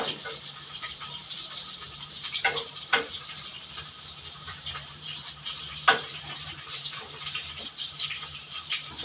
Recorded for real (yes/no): no